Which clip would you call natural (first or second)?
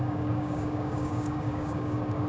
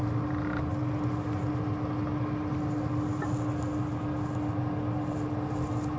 second